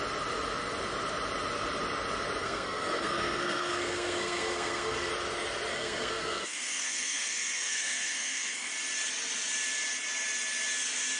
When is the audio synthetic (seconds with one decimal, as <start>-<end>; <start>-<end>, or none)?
2.4-5.1; 5.7-8.7